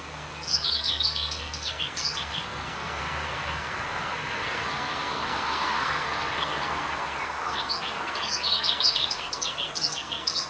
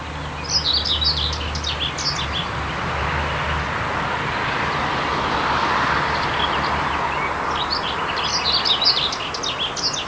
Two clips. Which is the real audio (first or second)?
second